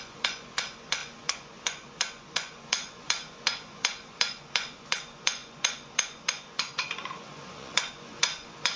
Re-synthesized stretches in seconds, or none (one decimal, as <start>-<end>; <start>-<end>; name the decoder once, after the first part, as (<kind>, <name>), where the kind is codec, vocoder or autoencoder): 0.0-8.8 (vocoder, Vocos)